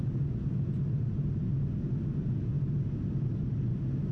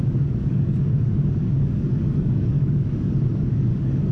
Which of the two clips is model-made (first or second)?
second